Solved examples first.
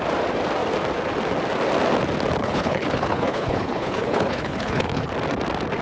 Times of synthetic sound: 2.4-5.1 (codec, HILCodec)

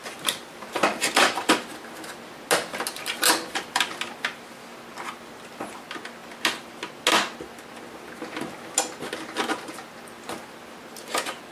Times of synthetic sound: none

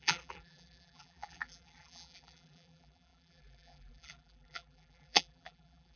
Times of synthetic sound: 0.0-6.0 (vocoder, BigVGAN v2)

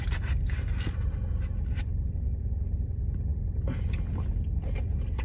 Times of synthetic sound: none

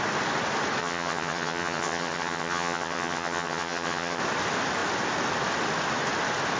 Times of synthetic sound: 0.8-4.2 (vocoder, HiFi-GAN)

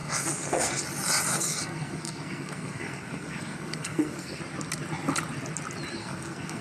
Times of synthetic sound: 0.0-0.8 (codec, SNAC); 1.3-4.4; 6.0-6.6

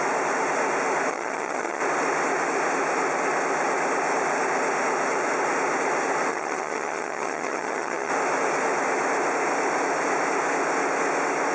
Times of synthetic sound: 1.1-1.8 (vocoder, HiFi-GAN); 6.3-8.1